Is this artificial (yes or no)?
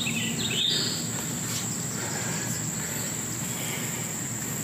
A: no